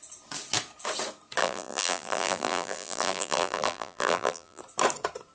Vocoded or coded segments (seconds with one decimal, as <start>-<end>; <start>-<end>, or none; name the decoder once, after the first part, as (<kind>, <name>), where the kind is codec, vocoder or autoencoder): 1.4-4.6 (vocoder, BigVGAN v2)